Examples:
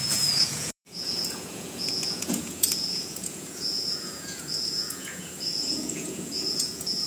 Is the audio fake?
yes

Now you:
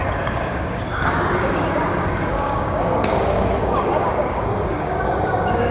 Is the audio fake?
yes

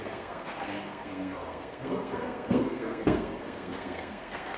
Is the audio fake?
yes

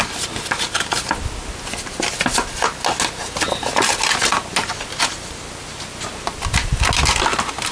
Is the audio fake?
no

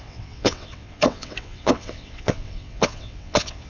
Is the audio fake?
yes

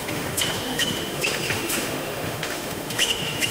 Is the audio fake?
yes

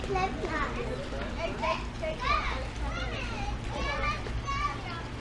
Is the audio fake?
no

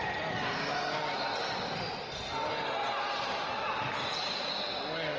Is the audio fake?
no